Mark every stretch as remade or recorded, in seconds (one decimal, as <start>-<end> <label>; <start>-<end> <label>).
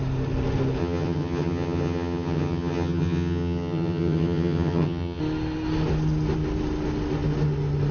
0.0-0.8 recorded; 0.8-5.2 remade; 5.2-7.9 recorded